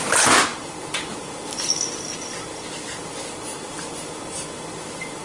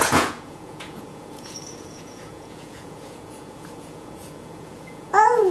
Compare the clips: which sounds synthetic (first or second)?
second